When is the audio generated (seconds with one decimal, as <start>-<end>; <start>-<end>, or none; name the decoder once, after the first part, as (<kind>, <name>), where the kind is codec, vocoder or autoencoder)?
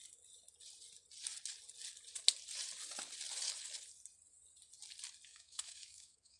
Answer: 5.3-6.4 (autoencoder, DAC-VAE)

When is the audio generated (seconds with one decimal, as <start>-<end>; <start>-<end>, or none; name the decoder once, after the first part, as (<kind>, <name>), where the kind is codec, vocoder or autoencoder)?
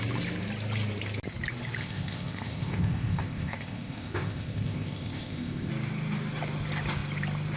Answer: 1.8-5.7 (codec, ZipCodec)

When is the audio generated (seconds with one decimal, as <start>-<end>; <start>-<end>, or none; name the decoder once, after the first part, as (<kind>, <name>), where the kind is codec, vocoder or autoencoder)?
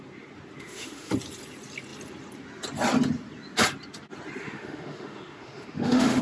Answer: 0.6-1.1 (autoencoder, DAC-VAE); 4.4-6.2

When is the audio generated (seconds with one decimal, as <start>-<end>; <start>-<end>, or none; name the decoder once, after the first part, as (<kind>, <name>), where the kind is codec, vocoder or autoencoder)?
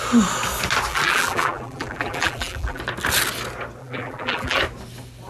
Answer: 0.9-2.8 (vocoder, BigVGAN v2); 3.8-4.6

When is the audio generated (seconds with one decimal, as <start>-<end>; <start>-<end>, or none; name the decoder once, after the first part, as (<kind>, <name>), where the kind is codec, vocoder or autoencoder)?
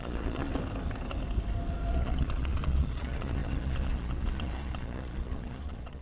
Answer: 0.0-0.5 (vocoder, Vocos); 1.9-6.0